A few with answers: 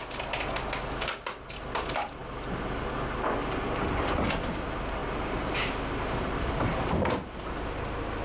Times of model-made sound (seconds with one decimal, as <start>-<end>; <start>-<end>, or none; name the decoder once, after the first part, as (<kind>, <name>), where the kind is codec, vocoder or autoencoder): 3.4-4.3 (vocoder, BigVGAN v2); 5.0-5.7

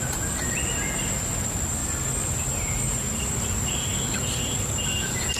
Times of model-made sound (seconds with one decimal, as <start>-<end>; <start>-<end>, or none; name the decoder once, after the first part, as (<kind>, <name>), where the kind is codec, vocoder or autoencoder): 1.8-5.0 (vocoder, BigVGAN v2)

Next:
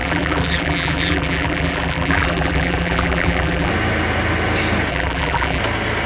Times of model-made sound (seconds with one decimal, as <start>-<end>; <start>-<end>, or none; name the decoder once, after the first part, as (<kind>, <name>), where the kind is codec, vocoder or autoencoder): 0.0-3.7 (vocoder, BigVGAN v2); 4.9-5.6

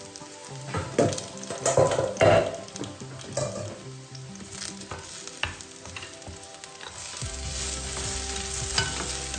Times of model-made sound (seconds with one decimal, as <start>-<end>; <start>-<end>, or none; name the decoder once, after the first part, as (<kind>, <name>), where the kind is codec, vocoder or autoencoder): 0.4-1.0 (vocoder, BigVGAN v2)

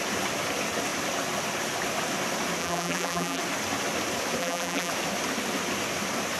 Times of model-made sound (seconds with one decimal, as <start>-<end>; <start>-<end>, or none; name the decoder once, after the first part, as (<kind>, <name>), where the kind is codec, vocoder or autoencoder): 2.6-3.4 (vocoder, BigVGAN v2); 4.4-4.9

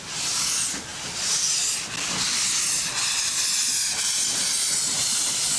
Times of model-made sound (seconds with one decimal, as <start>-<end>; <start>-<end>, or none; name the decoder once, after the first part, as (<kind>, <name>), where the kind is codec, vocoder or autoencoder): none

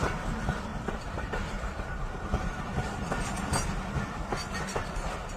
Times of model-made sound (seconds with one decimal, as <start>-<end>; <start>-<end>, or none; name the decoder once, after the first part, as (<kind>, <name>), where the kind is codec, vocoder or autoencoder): 0.7-3.1 (vocoder, BigVGAN v2)